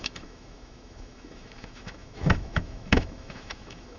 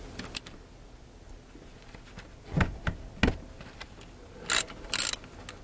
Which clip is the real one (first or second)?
second